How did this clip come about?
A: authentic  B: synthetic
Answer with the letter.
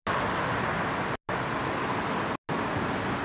A